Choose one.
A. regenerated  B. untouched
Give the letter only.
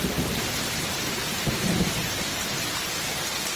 B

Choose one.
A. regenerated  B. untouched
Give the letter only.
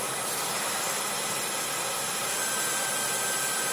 B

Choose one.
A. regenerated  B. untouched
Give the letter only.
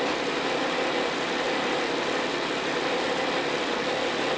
B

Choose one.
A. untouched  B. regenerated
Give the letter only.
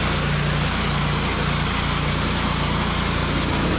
A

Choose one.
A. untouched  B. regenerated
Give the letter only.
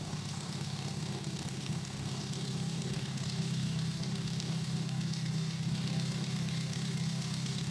B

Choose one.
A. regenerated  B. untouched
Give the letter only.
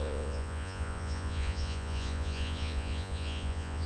A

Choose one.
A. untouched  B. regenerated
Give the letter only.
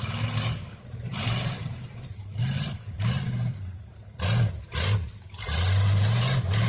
B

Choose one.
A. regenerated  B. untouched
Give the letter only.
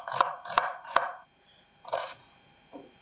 A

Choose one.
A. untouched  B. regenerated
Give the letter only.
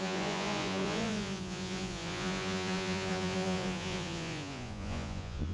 B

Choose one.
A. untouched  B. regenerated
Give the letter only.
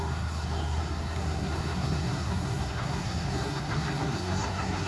B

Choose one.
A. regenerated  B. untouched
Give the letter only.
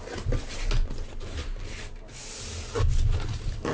B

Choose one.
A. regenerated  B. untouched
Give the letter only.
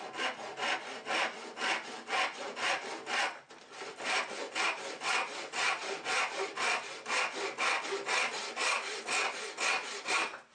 B